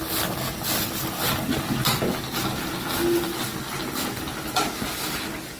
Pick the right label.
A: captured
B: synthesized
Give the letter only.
A